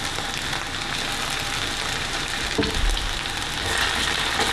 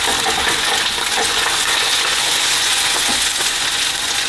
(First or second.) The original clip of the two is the first